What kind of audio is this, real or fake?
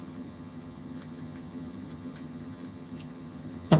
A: fake